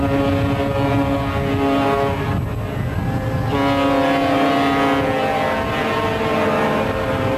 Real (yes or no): yes